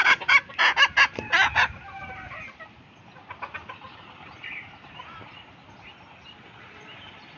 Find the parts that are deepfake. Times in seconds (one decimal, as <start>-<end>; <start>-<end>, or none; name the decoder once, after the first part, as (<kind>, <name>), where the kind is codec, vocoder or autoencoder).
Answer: none